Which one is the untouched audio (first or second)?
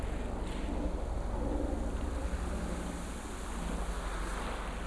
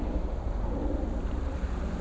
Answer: first